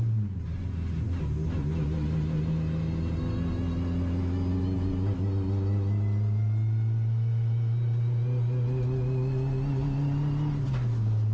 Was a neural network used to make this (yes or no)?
no